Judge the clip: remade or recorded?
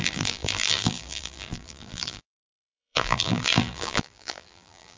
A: remade